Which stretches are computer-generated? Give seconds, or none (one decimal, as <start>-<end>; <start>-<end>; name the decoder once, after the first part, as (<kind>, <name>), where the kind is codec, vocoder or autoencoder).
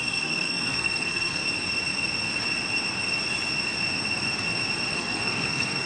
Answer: 0.0-1.4 (codec, SNAC); 4.9-5.9